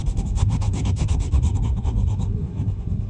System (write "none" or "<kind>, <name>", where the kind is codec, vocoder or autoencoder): codec, SNAC